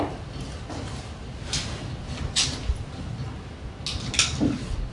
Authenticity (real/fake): real